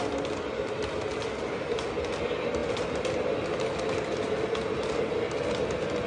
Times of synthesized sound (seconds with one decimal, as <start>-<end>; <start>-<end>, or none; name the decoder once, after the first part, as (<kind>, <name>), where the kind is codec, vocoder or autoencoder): none